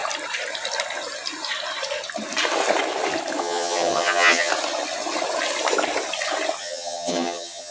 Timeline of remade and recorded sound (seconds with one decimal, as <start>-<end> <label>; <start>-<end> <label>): 0.0-3.4 recorded; 3.4-4.5 remade; 4.5-6.6 recorded; 6.6-7.7 remade